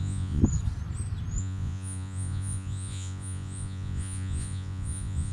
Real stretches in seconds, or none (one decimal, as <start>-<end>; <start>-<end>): 0.4-1.4